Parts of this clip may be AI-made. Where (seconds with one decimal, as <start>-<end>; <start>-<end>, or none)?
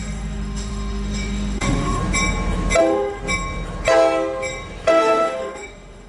0.0-2.0; 2.8-3.2; 4.9-6.1